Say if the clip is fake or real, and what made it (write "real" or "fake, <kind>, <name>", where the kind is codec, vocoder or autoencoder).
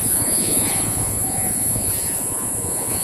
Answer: fake, vocoder, Vocos